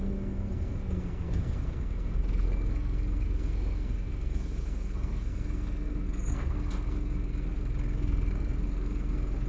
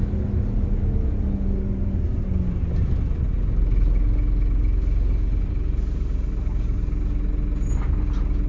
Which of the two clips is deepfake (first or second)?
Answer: first